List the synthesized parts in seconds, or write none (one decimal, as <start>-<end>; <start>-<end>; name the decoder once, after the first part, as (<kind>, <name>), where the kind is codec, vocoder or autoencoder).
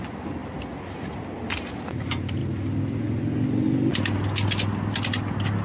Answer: none